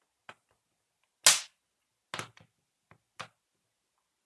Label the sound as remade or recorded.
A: recorded